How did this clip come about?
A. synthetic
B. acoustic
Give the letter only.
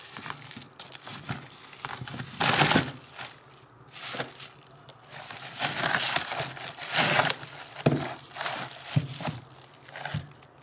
B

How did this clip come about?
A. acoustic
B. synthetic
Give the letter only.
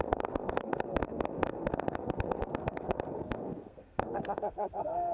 B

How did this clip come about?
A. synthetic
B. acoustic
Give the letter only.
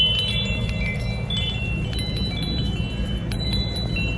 B